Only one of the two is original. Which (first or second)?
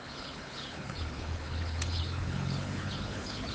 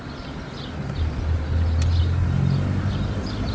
second